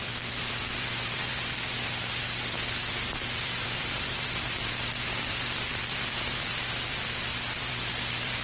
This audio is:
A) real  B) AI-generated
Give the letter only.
B